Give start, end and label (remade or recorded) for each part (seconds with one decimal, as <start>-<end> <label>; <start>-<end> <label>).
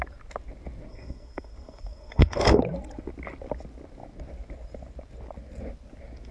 0.0-0.9 recorded; 0.9-2.6 remade; 2.6-6.3 recorded